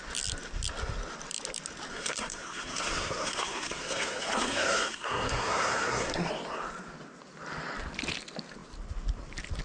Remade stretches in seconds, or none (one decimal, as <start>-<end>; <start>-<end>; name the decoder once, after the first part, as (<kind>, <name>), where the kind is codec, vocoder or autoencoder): 1.9-6.3 (codec, SNAC)